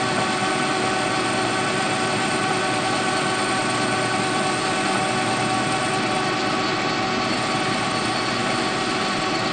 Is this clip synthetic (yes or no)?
no